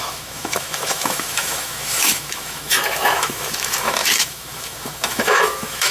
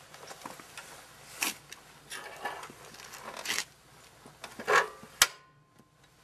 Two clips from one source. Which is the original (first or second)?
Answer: second